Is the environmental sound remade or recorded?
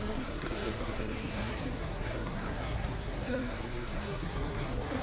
remade